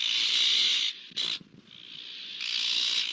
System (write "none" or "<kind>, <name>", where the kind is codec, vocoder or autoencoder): none